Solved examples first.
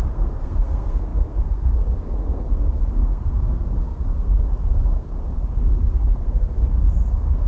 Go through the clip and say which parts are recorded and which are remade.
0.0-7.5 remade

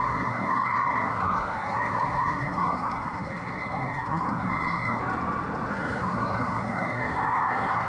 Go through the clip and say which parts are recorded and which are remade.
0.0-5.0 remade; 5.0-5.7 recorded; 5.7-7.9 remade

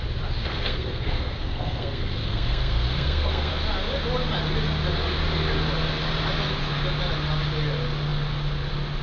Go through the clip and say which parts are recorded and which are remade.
0.0-0.4 recorded; 0.4-3.5 remade; 3.5-9.0 recorded

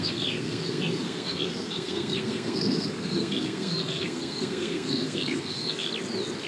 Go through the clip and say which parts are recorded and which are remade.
0.0-5.9 remade; 5.9-6.5 recorded

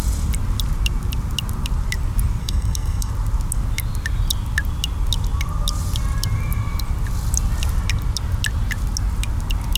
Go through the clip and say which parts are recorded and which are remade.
0.0-2.4 recorded; 2.4-3.1 remade; 3.1-9.8 recorded

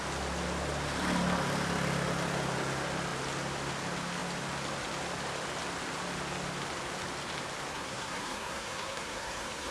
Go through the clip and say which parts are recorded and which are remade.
0.0-7.7 recorded; 7.7-9.7 remade

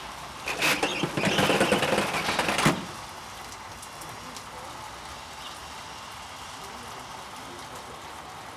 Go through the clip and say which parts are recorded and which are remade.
0.0-8.6 recorded